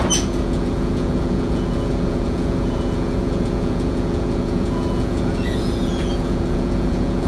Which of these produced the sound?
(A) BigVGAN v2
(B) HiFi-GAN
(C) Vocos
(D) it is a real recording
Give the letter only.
C